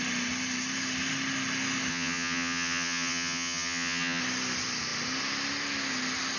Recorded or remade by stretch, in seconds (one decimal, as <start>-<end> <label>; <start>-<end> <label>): 0.0-1.9 recorded; 1.9-4.2 remade; 4.2-6.4 recorded